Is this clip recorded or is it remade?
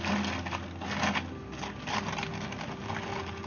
recorded